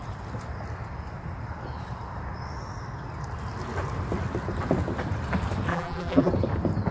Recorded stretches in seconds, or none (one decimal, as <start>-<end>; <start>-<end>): 0.0-5.7; 6.3-6.9